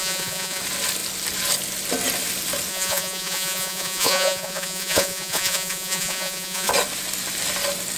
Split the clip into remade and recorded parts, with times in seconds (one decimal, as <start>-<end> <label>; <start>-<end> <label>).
0.0-0.6 remade; 0.6-2.7 recorded; 2.7-6.7 remade; 6.7-8.0 recorded

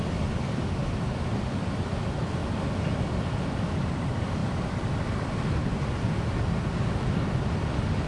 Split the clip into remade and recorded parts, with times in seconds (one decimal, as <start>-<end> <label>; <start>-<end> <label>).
0.0-8.1 recorded

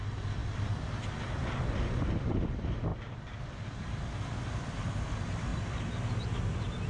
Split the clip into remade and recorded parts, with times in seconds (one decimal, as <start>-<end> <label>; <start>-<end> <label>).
0.0-2.9 remade; 2.9-3.4 recorded; 3.4-5.5 remade; 5.5-6.3 recorded; 6.3-6.9 remade

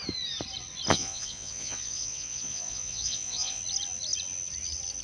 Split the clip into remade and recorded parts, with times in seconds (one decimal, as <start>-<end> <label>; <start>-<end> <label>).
0.0-0.9 recorded; 0.9-3.6 remade; 3.6-5.0 recorded

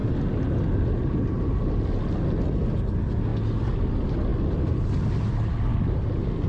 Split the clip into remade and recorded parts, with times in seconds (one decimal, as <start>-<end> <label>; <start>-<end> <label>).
0.0-6.5 recorded

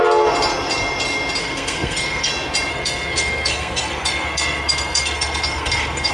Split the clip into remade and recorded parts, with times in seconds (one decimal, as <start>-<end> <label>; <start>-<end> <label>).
0.0-1.4 recorded; 1.4-2.3 remade; 2.3-2.7 recorded; 2.7-6.1 remade

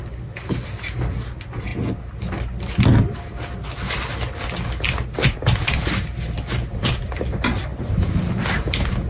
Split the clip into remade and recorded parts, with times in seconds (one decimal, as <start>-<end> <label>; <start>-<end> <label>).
0.0-9.1 recorded